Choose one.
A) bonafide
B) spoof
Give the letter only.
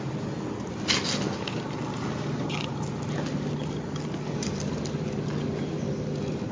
A